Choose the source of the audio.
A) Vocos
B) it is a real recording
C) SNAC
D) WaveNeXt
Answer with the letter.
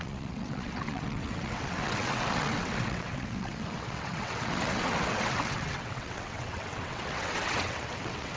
D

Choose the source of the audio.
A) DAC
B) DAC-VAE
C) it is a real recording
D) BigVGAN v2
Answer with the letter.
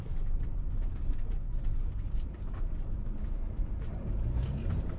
D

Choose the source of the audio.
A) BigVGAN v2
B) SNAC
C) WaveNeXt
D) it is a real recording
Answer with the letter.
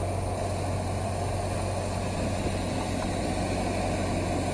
D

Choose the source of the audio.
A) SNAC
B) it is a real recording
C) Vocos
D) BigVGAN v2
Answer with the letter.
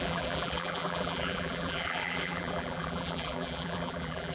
D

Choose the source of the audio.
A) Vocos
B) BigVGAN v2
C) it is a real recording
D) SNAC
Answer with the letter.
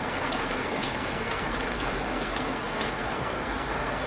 D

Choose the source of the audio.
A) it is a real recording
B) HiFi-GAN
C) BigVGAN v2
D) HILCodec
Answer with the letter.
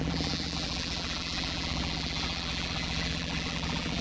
C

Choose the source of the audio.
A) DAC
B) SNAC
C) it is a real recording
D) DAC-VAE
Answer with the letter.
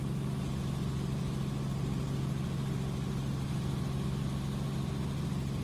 C